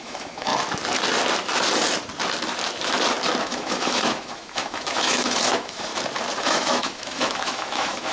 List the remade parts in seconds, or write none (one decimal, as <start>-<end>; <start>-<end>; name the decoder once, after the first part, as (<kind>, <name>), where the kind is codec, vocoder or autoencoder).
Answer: 0.0-0.5 (autoencoder, DAC-VAE); 3.4-5.9; 6.4-8.1